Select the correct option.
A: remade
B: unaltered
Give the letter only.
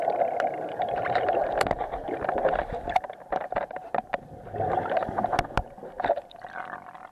B